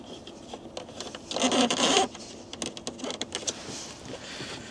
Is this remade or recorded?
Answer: recorded